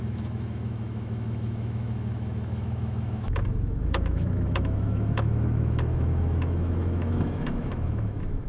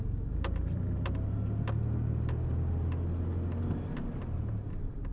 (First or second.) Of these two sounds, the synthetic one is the first